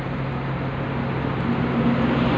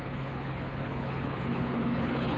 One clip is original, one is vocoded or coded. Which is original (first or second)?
first